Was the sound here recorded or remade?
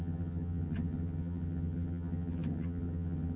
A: remade